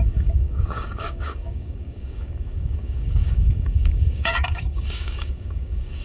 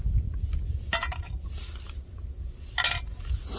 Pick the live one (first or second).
second